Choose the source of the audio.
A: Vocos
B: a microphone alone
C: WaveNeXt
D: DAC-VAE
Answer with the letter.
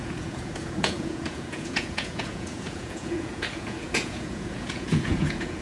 A